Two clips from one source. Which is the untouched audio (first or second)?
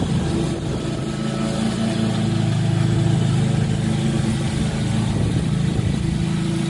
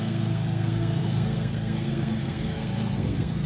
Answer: first